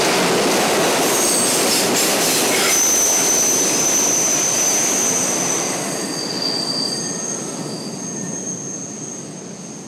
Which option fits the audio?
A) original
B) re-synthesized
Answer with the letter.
A